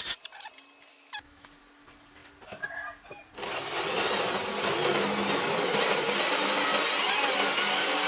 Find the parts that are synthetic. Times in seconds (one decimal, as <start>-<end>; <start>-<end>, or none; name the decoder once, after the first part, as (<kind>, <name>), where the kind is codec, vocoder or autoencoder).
0.9-1.6 (autoencoder, DAC-VAE)